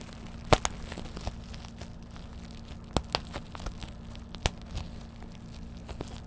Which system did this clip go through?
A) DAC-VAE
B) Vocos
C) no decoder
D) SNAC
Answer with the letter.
C